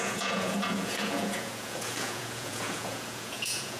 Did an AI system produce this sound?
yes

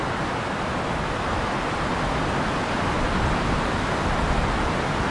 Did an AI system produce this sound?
no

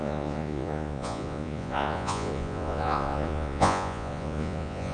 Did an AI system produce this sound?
yes